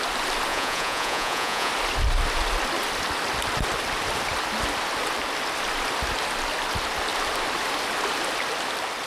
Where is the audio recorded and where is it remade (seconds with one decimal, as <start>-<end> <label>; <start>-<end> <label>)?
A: 0.0-0.5 recorded; 0.5-1.7 remade; 1.7-9.1 recorded